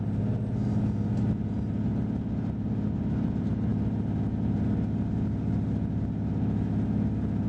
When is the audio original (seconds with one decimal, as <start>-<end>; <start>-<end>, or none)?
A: 0.0-7.5